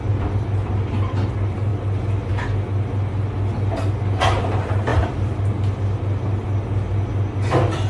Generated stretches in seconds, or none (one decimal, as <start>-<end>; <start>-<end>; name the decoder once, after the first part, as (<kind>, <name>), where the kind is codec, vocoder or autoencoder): 4.9-5.5 (vocoder, BigVGAN v2)